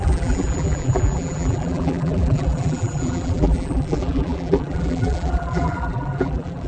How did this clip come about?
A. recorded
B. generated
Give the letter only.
B